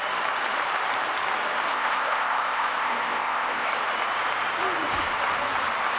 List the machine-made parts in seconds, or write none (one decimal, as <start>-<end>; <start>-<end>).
1.7-3.7